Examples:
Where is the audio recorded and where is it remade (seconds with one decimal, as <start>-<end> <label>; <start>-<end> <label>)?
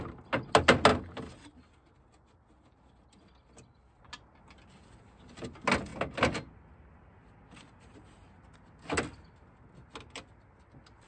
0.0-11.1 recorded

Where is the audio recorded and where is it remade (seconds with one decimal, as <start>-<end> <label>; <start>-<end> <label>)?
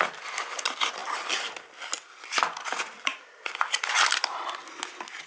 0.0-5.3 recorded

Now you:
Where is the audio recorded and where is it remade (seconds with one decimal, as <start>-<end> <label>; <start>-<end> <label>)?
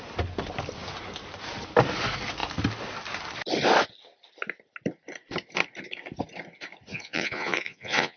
0.0-6.9 recorded; 6.9-8.2 remade